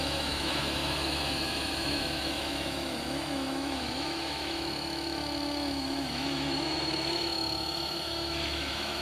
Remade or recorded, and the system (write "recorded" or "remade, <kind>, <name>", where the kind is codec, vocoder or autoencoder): remade, autoencoder, DAC-VAE